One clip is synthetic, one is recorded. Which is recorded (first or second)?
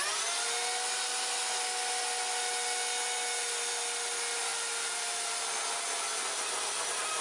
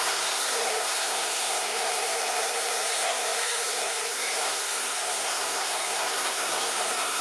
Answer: first